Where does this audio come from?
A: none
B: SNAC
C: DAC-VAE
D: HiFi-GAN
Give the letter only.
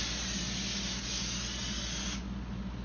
A